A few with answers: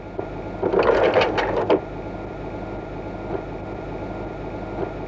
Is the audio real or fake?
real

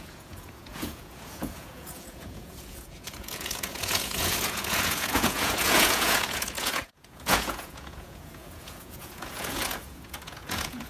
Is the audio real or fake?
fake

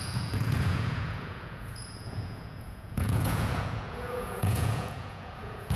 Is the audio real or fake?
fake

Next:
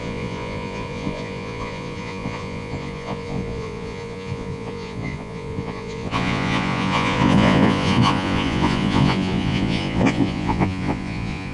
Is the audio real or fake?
fake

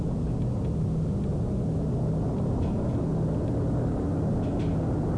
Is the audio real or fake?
real